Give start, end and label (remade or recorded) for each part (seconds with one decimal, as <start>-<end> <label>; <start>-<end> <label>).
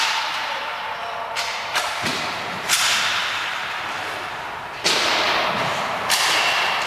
0.0-6.9 remade